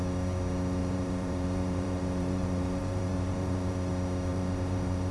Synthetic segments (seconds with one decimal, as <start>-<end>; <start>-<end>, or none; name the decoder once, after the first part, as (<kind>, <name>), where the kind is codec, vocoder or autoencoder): 0.8-3.9 (vocoder, BigVGAN v2); 4.3-5.1